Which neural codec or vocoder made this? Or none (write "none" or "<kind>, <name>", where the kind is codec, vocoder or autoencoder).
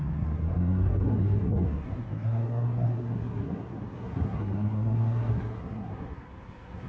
codec, SNAC